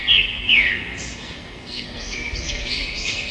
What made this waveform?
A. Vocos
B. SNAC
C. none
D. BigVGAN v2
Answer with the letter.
B